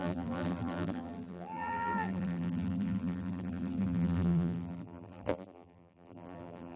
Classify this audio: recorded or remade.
remade